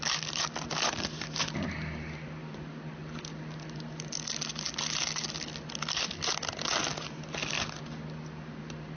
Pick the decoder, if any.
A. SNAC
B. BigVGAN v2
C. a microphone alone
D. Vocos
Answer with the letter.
C